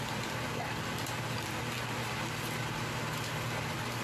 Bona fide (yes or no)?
yes